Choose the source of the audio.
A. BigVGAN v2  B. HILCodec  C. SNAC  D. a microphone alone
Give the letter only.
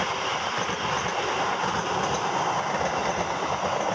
D